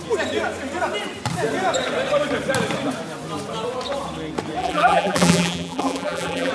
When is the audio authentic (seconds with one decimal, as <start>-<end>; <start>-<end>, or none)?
0.0-4.6